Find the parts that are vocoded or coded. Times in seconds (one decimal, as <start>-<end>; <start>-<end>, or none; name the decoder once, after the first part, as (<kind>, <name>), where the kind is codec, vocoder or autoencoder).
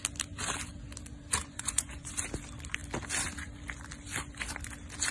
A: 1.4-2.1 (vocoder, Vocos)